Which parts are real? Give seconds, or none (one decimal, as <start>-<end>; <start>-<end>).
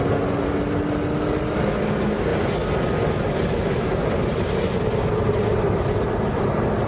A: 0.0-6.9